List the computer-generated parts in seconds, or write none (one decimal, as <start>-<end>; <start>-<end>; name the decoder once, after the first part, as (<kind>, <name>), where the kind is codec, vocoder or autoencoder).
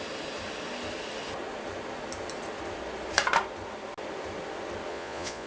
4.9-5.5 (vocoder, Vocos)